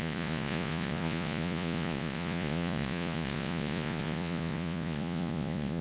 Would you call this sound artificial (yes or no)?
yes